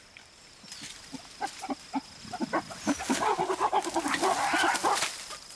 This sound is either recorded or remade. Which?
recorded